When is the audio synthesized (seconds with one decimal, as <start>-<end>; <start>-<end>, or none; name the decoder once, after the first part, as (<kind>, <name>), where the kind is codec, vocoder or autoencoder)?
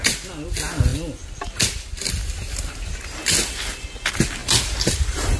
0.9-1.5 (vocoder, BigVGAN v2); 4.4-5.4